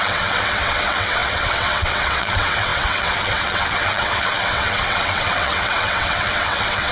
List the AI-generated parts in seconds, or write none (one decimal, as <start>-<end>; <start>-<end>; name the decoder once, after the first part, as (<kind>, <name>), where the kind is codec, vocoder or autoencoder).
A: 0.0-6.9 (vocoder, WaveNeXt)